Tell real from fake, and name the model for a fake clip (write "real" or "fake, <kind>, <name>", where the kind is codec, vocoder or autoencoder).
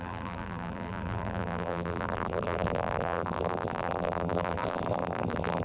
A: fake, vocoder, BigVGAN v2